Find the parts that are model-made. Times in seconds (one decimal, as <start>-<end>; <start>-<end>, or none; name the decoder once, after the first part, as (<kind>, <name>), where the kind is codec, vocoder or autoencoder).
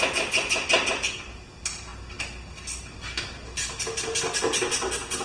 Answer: none